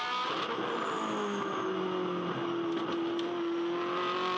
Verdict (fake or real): real